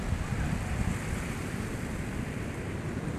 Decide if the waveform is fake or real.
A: real